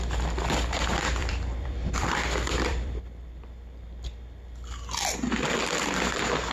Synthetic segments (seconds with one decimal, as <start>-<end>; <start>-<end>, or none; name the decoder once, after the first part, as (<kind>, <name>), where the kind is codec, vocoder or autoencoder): 1.2-5.1 (vocoder, BigVGAN v2)